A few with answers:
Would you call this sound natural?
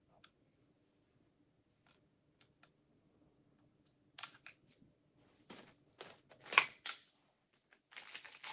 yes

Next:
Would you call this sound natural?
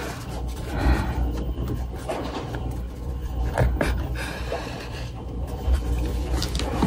no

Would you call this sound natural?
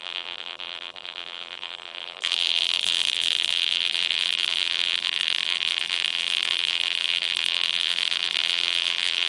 no